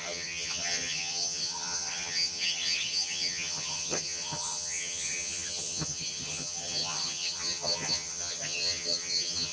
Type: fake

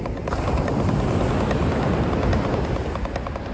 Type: real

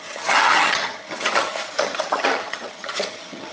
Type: fake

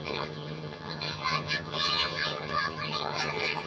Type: fake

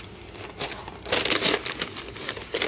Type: real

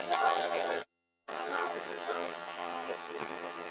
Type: fake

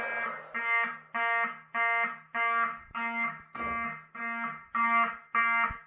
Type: real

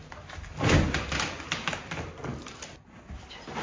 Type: real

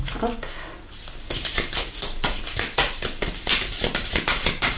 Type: real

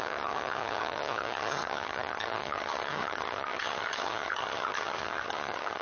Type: fake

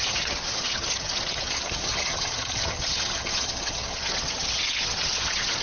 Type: fake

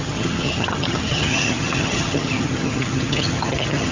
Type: fake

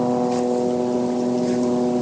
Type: real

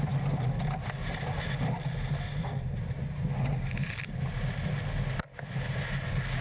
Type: real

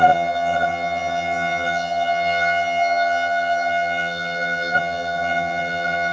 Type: fake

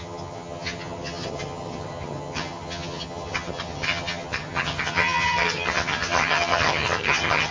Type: fake